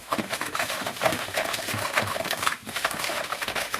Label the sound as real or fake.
fake